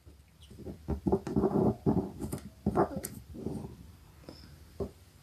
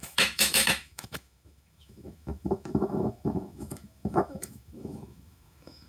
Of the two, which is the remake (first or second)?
second